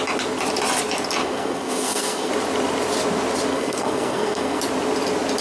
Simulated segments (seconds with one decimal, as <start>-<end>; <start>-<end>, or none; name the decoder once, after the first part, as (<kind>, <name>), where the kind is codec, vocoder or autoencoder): 1.2-2.3 (codec, SNAC); 3.5-4.6